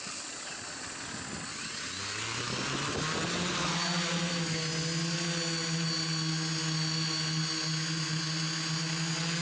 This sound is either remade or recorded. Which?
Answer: recorded